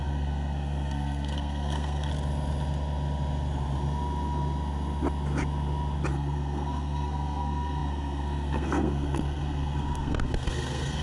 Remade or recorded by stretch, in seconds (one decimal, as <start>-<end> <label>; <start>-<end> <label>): 0.0-2.1 remade; 2.1-6.1 recorded; 6.1-11.0 remade